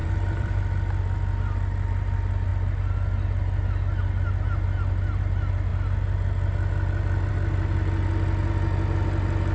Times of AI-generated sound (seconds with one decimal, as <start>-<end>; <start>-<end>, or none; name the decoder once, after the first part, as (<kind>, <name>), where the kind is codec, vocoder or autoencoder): 0.0-0.6 (vocoder, BigVGAN v2)